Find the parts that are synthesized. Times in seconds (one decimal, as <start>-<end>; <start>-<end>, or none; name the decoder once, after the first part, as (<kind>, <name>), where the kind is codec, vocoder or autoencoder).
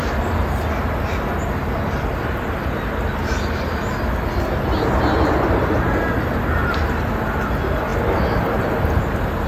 none